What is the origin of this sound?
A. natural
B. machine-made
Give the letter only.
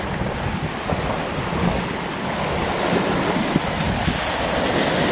A